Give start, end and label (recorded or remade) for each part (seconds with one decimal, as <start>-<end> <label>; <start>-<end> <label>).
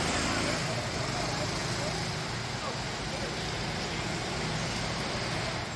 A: 0.0-5.8 recorded